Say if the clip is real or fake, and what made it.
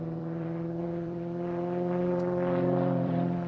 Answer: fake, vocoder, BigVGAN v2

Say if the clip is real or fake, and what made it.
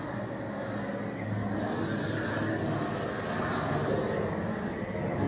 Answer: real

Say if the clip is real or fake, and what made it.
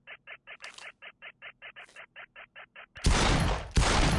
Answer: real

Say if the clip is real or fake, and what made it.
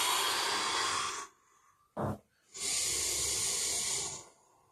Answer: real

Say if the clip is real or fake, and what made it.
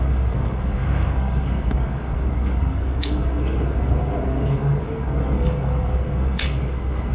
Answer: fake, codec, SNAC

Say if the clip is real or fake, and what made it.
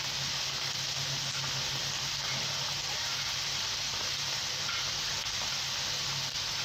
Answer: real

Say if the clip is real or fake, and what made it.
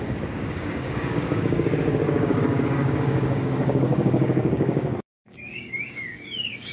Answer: fake, codec, DAC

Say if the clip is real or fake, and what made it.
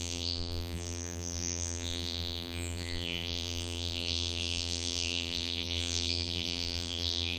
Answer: fake, vocoder, BigVGAN v2